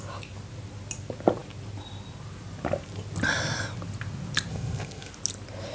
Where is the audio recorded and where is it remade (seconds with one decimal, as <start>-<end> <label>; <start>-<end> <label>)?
0.0-4.5 recorded; 4.5-5.1 remade; 5.1-5.7 recorded